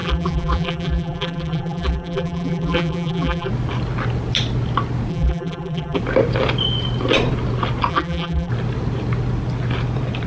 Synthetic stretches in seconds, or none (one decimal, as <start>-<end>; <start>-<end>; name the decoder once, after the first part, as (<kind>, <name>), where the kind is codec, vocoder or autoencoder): 0.0-3.5 (vocoder, BigVGAN v2); 5.1-6.0; 7.9-8.5